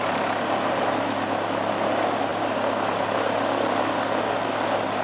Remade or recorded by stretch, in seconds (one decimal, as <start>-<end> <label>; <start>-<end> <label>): 0.0-5.0 recorded